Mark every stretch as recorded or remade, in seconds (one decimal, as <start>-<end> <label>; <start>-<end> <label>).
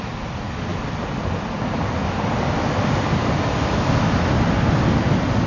0.0-5.5 recorded